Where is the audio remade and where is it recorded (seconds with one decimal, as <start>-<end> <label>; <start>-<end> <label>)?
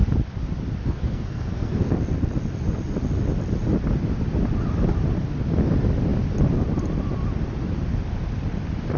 0.0-0.8 recorded; 0.8-1.9 remade; 1.9-9.0 recorded